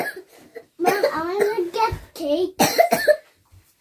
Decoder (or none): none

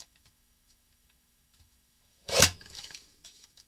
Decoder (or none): autoencoder, DAC-VAE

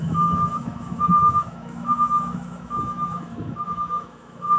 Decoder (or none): autoencoder, DAC-VAE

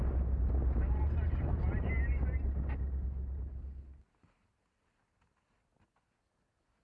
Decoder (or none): none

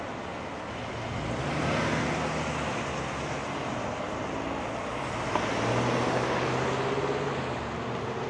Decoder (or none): none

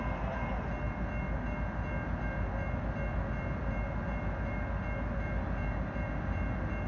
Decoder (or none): none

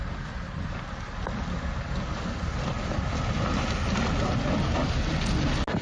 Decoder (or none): none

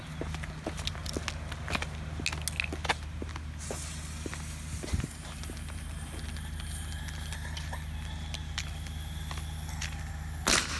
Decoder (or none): none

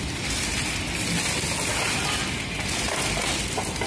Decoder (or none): none